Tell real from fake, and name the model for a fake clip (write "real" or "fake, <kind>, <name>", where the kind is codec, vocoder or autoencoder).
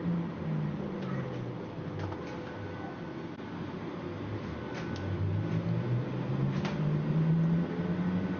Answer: real